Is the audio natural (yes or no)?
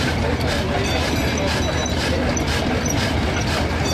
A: yes